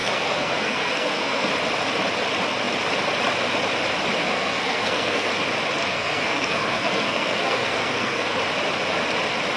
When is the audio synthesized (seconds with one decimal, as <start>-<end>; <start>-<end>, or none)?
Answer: 0.0-1.5; 4.2-5.3; 5.8-8.4